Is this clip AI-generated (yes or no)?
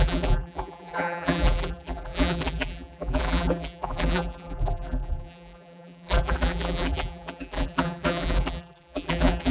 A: yes